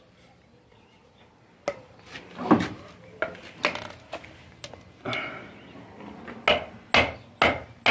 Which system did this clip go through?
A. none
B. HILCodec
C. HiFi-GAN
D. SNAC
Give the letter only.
A